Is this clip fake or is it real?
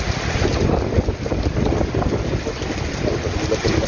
real